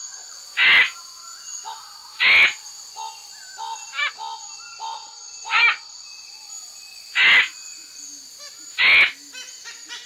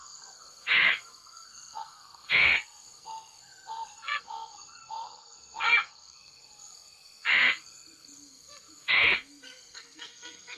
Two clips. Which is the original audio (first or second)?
first